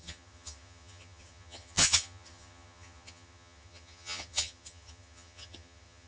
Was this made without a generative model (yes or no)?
no